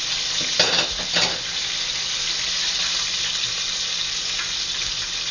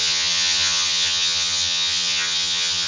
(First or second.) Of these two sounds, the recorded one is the first